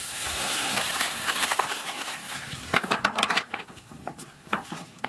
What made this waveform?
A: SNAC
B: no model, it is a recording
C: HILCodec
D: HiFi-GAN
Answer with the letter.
A